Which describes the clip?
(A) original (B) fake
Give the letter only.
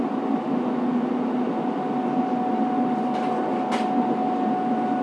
A